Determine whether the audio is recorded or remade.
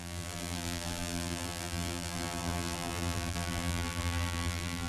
remade